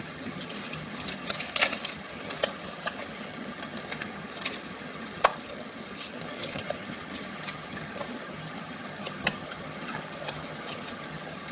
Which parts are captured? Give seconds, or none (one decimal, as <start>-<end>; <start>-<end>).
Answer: none